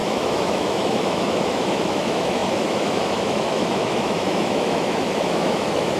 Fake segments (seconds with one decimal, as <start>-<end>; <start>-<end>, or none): 0.0-6.0